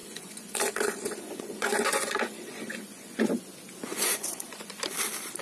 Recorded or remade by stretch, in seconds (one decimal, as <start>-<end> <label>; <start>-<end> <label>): 0.0-3.2 remade; 3.2-3.9 recorded; 3.9-4.8 remade; 4.8-5.4 recorded